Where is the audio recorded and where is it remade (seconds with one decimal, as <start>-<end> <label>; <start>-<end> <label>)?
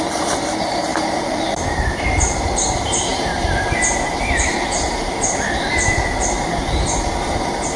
0.0-7.8 remade